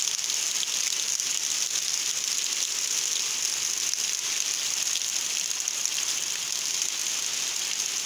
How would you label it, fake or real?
real